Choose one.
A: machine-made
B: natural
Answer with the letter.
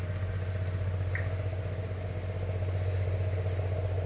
B